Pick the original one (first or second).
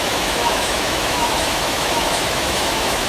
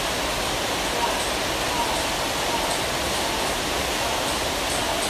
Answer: second